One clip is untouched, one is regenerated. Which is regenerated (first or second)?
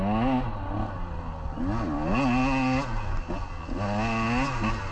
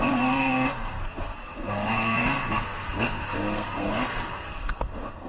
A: second